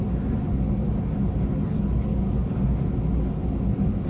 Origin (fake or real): real